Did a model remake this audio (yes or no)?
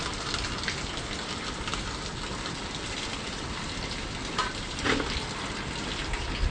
no